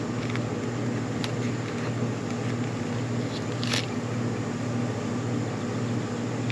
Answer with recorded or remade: recorded